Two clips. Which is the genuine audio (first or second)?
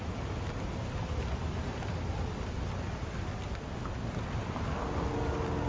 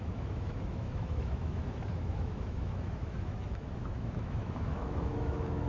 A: first